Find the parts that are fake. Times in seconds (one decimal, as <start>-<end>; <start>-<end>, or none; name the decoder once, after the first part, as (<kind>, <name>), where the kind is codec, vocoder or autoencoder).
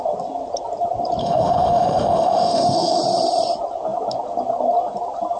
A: 1.2-3.0 (autoencoder, DAC-VAE)